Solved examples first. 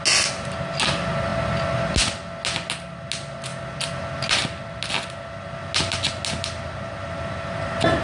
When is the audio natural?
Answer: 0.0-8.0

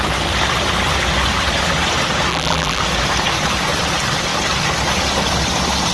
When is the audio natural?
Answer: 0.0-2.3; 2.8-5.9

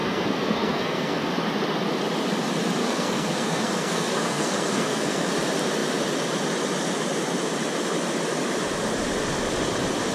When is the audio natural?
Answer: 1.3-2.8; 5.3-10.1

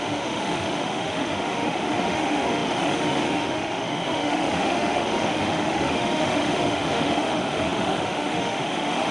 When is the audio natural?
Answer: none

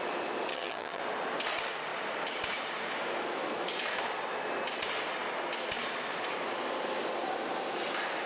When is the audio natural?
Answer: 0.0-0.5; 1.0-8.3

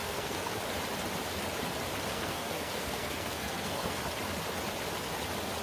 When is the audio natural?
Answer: 0.6-2.1; 4.0-5.6

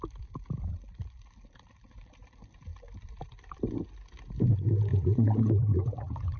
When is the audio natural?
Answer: 0.0-4.9